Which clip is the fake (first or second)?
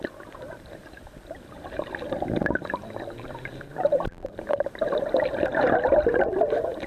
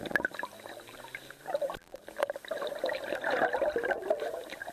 first